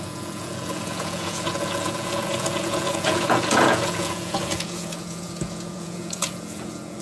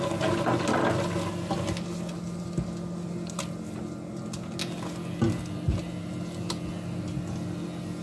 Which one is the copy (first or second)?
first